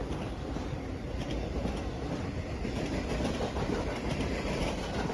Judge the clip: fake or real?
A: fake